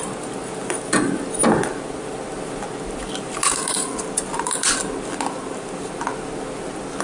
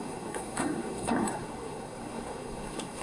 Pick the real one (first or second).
first